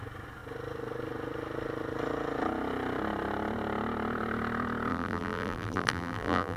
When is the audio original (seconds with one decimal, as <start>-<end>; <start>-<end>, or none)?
0.0-4.9